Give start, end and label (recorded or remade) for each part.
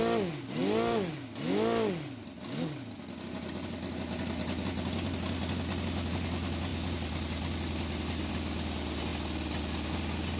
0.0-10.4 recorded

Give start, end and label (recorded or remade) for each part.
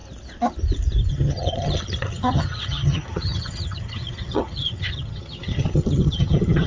0.0-1.1 recorded; 1.1-6.7 remade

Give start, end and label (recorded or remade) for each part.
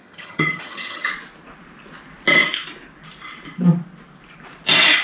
0.0-1.1 remade; 1.1-5.0 recorded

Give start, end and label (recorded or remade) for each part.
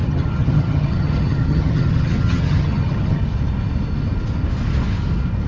0.0-3.2 remade; 3.2-5.5 recorded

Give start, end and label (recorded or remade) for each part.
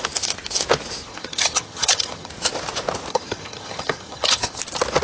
0.0-1.1 recorded; 1.1-2.3 remade; 2.3-3.1 recorded; 3.1-4.6 remade; 4.6-5.0 recorded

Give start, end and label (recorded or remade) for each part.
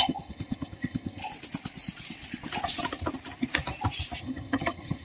0.0-1.2 remade; 1.2-4.2 recorded; 4.2-5.0 remade